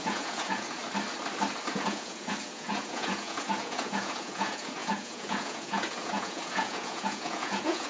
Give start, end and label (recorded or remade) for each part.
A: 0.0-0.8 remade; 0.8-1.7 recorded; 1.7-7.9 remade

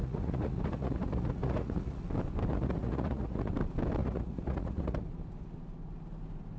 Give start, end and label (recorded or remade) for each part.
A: 0.0-2.1 remade; 2.1-2.5 recorded; 2.5-3.5 remade; 3.5-4.0 recorded; 4.0-5.1 remade; 5.1-6.6 recorded

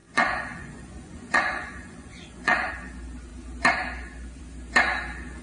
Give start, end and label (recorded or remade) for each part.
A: 0.0-2.7 remade; 2.7-5.4 recorded

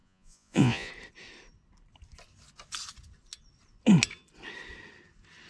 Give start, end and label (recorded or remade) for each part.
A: 0.0-0.9 remade; 0.9-5.5 recorded

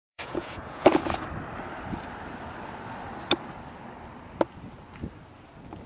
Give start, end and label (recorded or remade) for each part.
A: 0.0-1.0 remade; 1.0-5.9 recorded

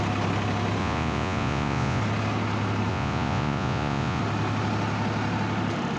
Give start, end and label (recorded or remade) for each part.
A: 0.0-0.8 recorded; 0.8-2.0 remade; 2.0-2.9 recorded; 2.9-4.2 remade; 4.2-6.0 recorded

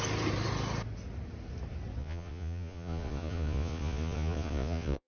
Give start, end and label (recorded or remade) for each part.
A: 0.0-2.0 recorded; 2.0-5.1 remade